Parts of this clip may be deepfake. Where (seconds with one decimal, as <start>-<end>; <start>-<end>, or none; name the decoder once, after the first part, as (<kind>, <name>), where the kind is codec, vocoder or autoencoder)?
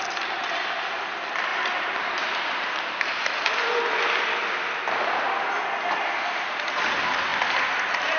1.5-3.8 (vocoder, BigVGAN v2)